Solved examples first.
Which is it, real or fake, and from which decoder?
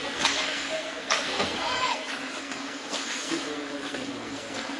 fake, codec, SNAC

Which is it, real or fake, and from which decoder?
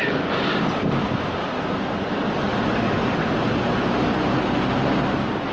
real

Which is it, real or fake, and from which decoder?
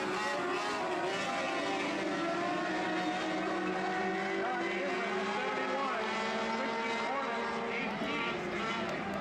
real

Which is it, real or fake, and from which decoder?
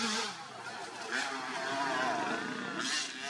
real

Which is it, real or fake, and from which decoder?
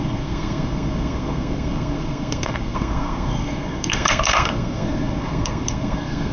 fake, codec, SNAC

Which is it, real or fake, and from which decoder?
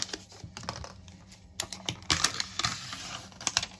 real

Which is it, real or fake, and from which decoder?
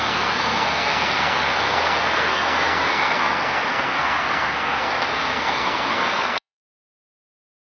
fake, codec, SNAC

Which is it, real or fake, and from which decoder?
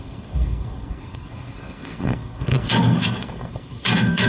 fake, codec, SNAC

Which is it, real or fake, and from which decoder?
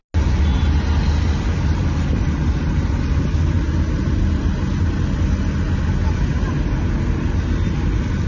real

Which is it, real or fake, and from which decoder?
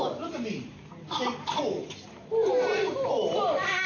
real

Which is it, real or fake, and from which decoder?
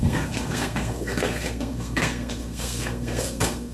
fake, codec, SNAC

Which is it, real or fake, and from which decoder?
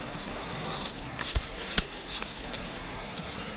fake, codec, SNAC